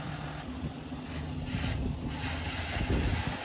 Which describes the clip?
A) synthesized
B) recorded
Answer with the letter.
B